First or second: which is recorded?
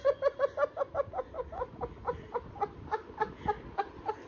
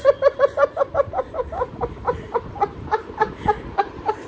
first